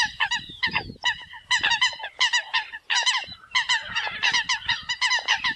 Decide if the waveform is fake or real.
real